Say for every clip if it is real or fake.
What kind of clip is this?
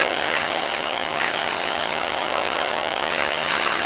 fake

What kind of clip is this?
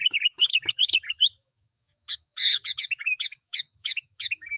fake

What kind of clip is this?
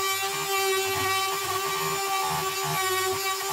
real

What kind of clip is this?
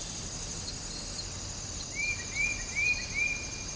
real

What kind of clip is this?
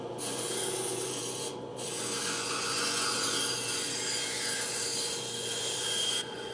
fake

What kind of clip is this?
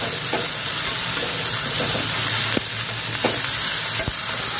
real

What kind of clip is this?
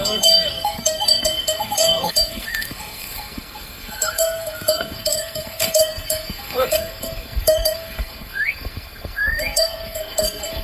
fake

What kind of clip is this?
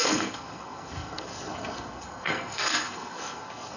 fake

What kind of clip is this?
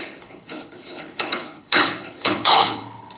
fake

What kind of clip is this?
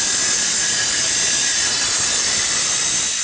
real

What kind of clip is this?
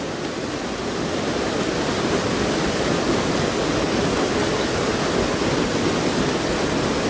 real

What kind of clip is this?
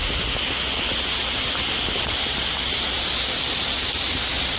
real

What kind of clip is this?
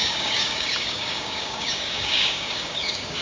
fake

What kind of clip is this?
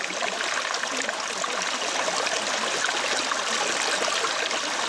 real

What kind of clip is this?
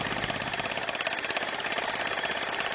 real